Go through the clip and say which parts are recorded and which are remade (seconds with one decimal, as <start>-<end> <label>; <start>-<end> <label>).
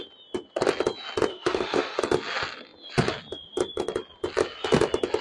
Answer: 0.0-1.3 recorded; 1.3-2.0 remade; 2.0-5.2 recorded